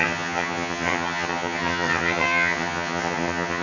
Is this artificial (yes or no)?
yes